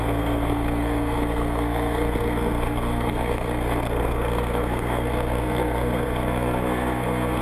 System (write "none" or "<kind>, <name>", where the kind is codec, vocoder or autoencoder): codec, SNAC